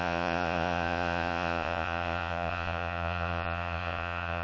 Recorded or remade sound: remade